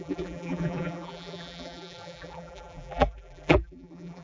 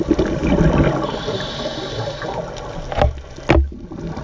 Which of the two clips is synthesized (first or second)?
first